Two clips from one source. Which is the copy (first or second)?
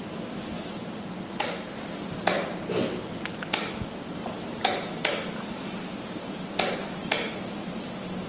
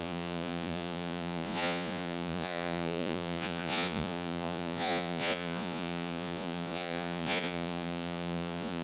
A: second